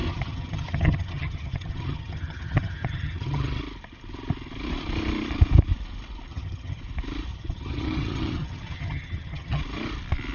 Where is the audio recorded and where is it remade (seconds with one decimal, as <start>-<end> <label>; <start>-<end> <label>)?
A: 0.0-3.6 remade; 3.6-6.3 recorded; 6.3-6.8 remade; 6.8-7.3 recorded; 7.3-9.6 remade; 9.6-10.3 recorded